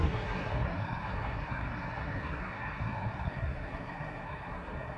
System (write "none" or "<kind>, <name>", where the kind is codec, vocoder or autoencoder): codec, SNAC